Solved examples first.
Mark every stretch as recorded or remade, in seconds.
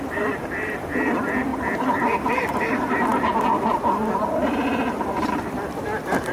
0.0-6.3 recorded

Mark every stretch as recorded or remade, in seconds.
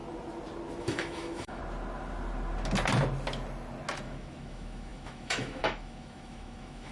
0.0-0.8 recorded; 0.8-1.6 remade; 1.6-4.0 recorded; 4.0-6.9 remade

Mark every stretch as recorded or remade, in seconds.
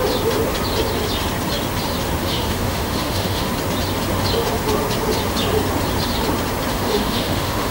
0.0-2.2 recorded; 2.2-3.5 remade; 3.5-6.7 recorded; 6.7-7.7 remade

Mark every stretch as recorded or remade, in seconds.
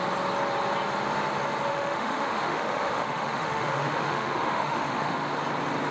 0.0-1.7 recorded; 1.7-5.2 remade; 5.2-5.9 recorded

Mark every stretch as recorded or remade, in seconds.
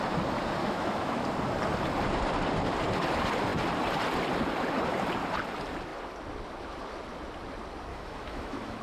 0.0-0.6 recorded; 0.6-1.2 remade; 1.2-7.9 recorded; 7.9-8.8 remade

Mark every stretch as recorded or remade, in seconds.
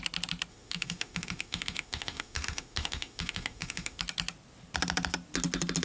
0.0-0.5 recorded; 0.5-4.0 remade; 4.0-5.8 recorded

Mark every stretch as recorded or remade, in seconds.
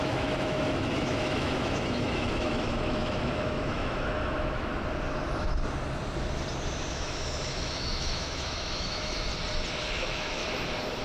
0.0-4.7 remade; 4.7-6.9 recorded; 6.9-9.3 remade; 9.3-9.8 recorded; 9.8-10.4 remade; 10.4-11.0 recorded